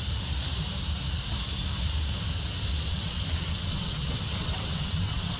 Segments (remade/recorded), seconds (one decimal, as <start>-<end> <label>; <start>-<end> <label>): 0.0-2.7 recorded; 2.7-5.4 remade